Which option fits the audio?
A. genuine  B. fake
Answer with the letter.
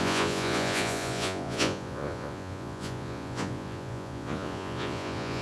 B